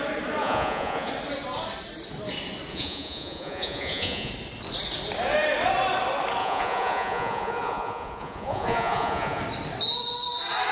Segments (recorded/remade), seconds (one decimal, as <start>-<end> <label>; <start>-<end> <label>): 0.0-0.4 recorded; 0.4-1.1 remade; 1.1-2.7 recorded; 2.7-4.3 remade; 4.3-6.4 recorded; 6.4-9.4 remade; 9.4-10.7 recorded